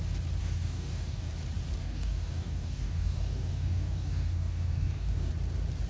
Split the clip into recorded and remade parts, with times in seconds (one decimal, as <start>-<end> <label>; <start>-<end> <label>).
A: 0.0-0.4 recorded; 0.4-1.3 remade; 1.3-1.8 recorded; 1.8-5.3 remade; 5.3-5.9 recorded